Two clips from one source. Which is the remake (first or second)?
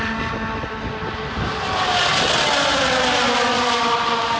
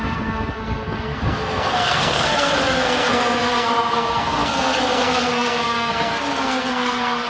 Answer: second